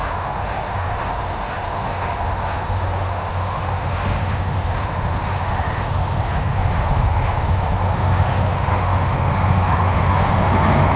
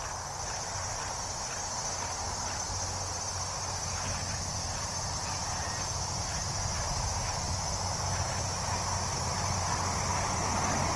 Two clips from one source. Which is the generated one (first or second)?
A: first